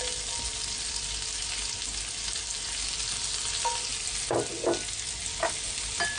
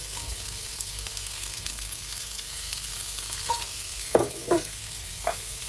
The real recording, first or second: first